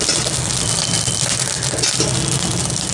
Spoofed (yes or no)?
no